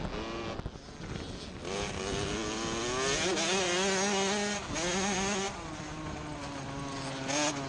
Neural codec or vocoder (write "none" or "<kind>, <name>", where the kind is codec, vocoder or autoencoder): none